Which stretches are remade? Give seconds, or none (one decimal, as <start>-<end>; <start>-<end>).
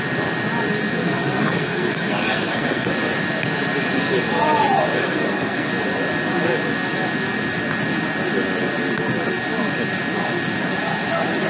0.9-2.9; 5.0-5.7